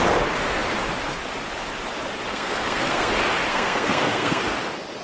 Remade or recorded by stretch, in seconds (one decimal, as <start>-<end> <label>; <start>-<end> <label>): 0.0-2.3 recorded; 2.3-3.1 remade; 3.1-3.5 recorded; 3.5-4.4 remade; 4.4-5.0 recorded